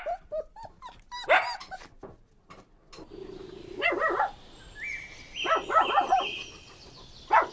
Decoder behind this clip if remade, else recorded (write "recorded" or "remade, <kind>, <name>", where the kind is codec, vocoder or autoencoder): recorded